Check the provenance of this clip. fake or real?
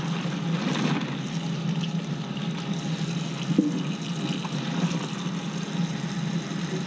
real